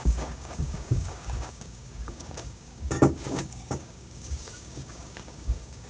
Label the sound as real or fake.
fake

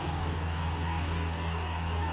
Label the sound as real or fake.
fake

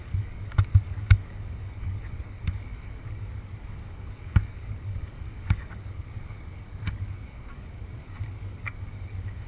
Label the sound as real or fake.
fake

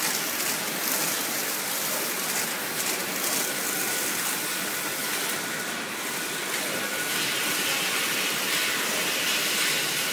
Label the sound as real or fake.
real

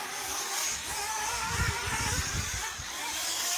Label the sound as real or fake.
fake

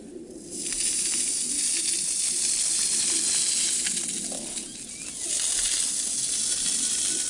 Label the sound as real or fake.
real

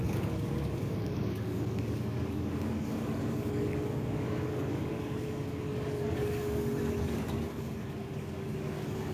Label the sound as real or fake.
fake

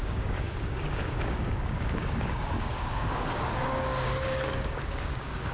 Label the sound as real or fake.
fake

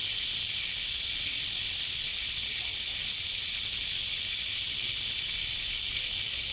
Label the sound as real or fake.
real